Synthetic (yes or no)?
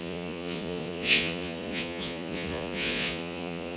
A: yes